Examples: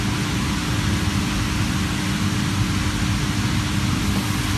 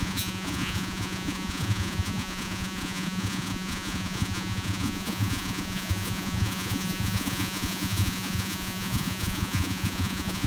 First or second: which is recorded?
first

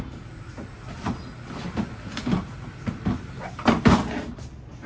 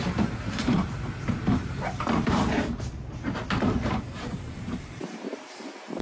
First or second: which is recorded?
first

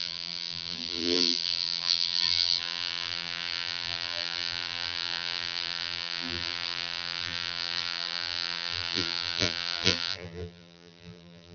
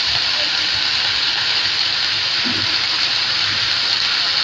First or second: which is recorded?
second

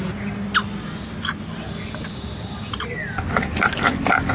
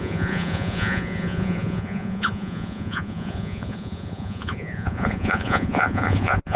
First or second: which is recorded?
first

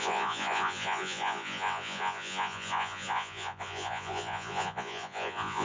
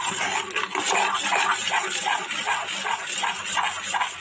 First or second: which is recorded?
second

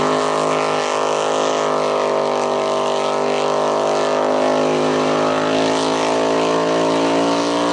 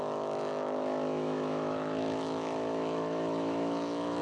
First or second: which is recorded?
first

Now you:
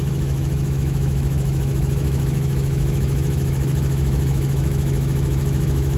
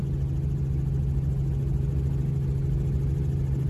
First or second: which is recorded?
second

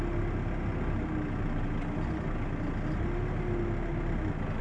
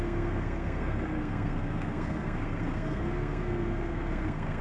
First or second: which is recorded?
first